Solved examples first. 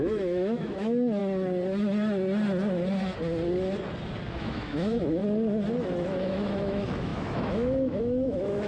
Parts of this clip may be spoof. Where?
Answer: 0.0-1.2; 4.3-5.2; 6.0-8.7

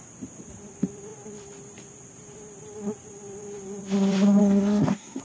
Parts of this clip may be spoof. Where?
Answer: 4.4-5.2

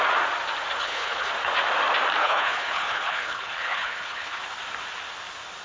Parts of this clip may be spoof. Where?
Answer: 0.8-1.3; 2.2-4.4